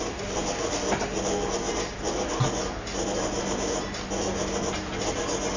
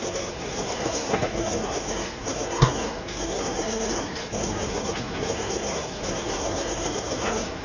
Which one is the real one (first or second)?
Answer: first